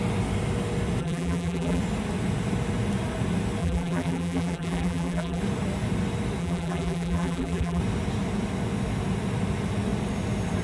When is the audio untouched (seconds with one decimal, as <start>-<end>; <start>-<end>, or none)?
0.0-1.0; 1.8-3.6; 5.4-6.4; 7.8-10.6